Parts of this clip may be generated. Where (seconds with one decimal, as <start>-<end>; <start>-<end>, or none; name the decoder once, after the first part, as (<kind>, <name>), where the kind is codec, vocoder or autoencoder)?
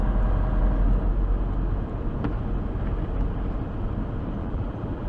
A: 4.4-5.1 (vocoder, BigVGAN v2)